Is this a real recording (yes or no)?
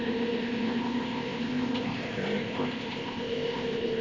no